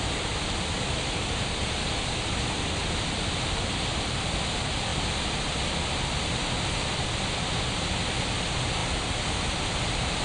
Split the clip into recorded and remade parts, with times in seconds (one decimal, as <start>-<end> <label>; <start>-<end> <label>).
0.0-10.2 recorded